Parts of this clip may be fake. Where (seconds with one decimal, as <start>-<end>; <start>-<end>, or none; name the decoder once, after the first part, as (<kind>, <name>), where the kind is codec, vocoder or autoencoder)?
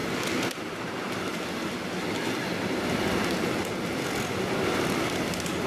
none